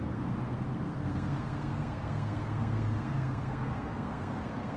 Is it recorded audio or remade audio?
remade